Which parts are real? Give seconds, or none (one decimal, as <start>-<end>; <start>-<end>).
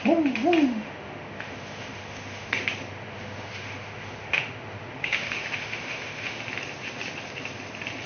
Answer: 0.0-0.7; 2.5-2.9; 6.4-8.1